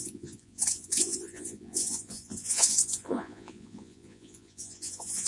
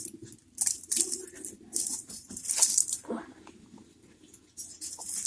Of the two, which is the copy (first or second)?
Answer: first